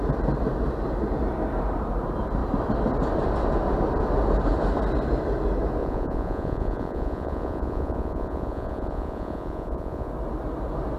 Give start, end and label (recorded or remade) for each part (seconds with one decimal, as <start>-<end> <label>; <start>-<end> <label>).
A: 0.0-5.8 recorded; 5.8-10.1 remade; 10.1-11.0 recorded